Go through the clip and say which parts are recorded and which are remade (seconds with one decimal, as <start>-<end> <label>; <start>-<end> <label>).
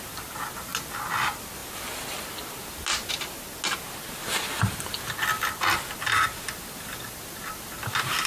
0.0-8.3 recorded